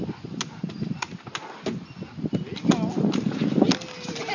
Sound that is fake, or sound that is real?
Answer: real